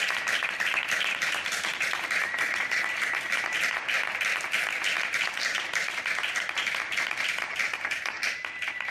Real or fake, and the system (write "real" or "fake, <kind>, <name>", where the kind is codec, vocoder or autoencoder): real